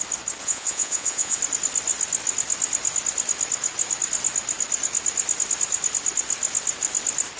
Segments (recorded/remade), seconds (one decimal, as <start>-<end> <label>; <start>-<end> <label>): 0.0-0.4 recorded; 0.4-1.4 remade; 1.4-7.4 recorded